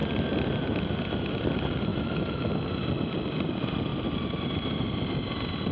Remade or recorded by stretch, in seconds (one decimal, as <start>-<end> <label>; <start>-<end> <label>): 0.0-1.9 recorded; 1.9-2.5 remade; 2.5-5.7 recorded

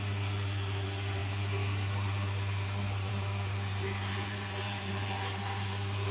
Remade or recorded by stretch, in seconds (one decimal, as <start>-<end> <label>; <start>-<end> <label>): 0.0-6.1 recorded

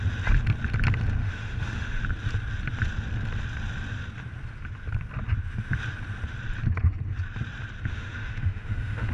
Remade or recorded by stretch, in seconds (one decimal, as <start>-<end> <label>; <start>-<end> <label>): 0.0-1.2 recorded; 1.2-2.0 remade; 2.0-7.9 recorded; 7.9-9.1 remade

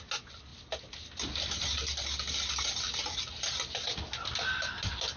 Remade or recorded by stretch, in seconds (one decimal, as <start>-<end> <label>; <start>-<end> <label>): 0.0-5.2 recorded

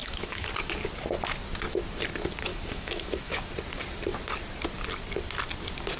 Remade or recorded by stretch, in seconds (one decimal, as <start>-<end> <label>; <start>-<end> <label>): 0.0-0.5 remade; 0.5-2.5 recorded; 2.5-3.5 remade; 3.5-6.0 recorded

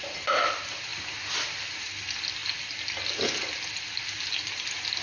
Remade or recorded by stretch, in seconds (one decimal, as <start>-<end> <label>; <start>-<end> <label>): 0.0-5.0 recorded

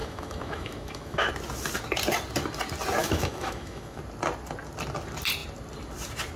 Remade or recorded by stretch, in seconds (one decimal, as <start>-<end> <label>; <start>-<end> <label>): 0.0-1.3 remade; 1.3-3.0 recorded; 3.0-4.0 remade; 4.0-6.4 recorded